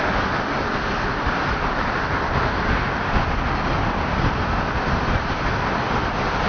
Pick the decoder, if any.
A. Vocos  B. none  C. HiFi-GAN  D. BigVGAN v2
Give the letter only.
B